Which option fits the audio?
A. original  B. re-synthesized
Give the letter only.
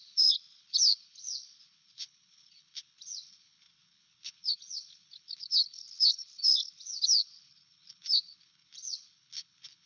B